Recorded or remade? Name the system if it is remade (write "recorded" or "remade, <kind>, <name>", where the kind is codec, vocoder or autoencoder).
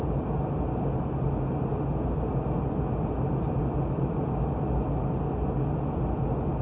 recorded